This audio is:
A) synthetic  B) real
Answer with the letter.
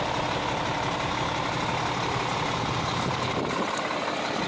B